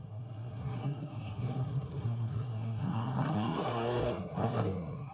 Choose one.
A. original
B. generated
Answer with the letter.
B